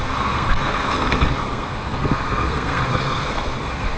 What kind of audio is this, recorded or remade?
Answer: remade